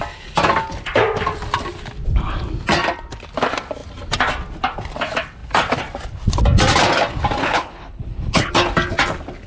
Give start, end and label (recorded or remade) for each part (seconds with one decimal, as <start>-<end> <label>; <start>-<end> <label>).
0.0-7.4 recorded; 7.4-8.5 remade; 8.5-9.5 recorded